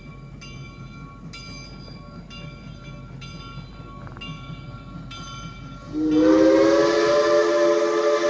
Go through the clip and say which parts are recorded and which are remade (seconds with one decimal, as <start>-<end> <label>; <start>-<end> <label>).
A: 0.0-8.3 recorded